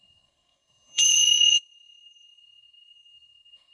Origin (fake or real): fake